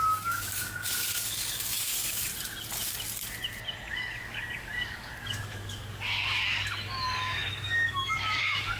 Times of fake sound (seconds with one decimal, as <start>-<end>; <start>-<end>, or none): 0.0-2.3; 3.9-8.8

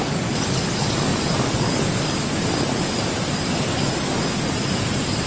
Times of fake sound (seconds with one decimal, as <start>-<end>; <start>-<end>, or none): none

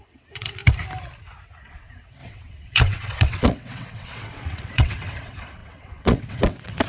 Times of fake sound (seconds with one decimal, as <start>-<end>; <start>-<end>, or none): 0.0-0.6; 1.7-6.9

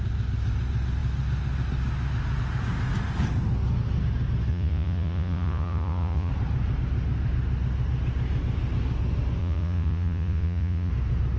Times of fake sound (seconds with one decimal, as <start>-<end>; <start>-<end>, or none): 4.5-6.3; 9.4-10.9

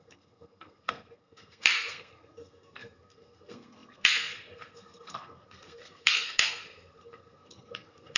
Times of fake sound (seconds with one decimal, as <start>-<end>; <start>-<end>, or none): 0.0-8.2

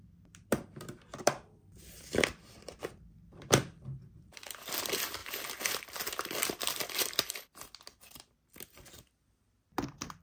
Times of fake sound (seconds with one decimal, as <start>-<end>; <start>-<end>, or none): 0.0-5.2; 5.8-10.2

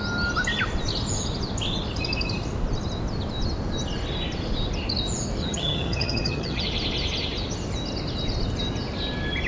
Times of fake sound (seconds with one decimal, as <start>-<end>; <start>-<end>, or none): 5.4-6.6